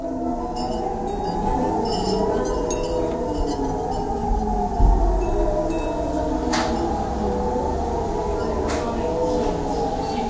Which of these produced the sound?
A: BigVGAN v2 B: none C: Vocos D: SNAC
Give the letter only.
B